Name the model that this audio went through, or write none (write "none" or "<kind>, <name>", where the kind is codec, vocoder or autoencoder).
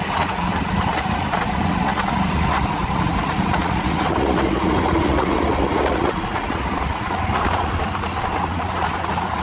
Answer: vocoder, Vocos